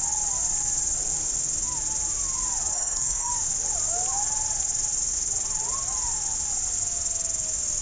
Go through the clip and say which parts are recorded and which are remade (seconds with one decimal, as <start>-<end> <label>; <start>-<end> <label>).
0.0-2.7 recorded; 2.7-3.3 remade; 3.3-7.8 recorded